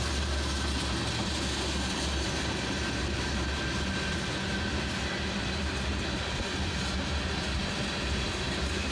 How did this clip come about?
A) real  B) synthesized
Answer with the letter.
A